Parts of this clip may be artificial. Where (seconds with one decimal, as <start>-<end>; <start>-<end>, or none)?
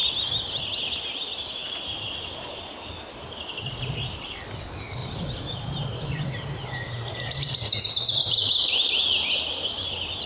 5.0-9.0